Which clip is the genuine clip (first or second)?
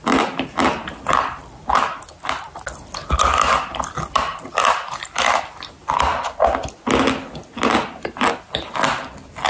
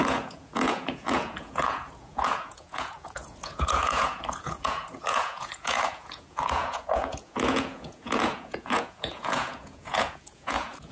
first